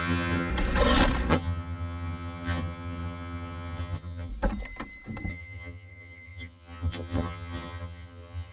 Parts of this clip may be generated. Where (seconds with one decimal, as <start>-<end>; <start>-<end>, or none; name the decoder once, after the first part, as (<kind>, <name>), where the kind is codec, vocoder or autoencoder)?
0.0-0.5 (vocoder, HiFi-GAN); 1.3-4.3; 5.3-8.5